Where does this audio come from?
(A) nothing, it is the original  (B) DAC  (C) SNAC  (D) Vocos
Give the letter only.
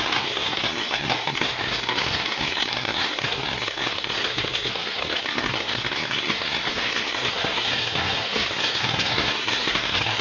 C